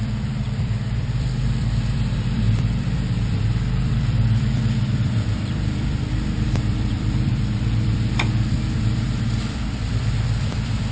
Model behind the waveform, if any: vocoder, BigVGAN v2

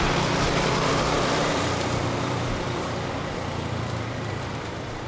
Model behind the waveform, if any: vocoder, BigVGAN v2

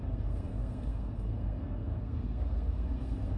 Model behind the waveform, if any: codec, SNAC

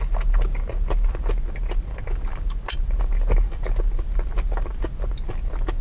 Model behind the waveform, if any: none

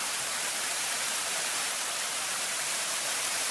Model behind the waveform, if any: vocoder, BigVGAN v2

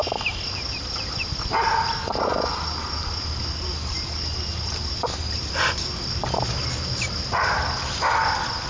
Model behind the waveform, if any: none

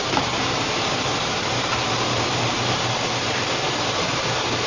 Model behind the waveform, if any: vocoder, BigVGAN v2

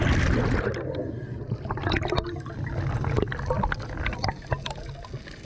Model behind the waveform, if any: none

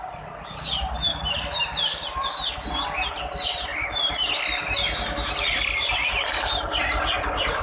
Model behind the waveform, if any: none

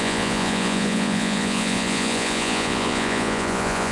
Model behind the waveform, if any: vocoder, Vocos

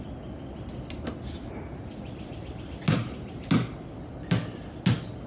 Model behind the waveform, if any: none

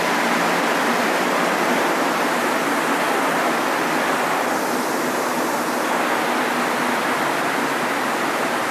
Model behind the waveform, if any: none